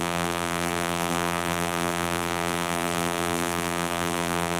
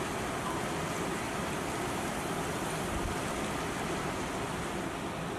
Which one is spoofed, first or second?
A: first